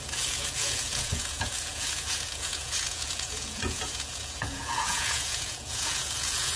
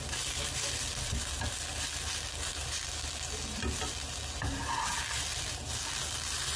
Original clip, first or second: second